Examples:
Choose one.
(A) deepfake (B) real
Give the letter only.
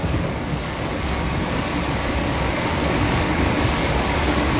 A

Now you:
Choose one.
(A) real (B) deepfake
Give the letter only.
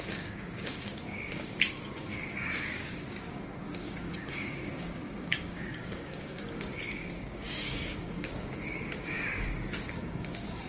B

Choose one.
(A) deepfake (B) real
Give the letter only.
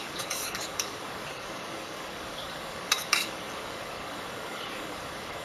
A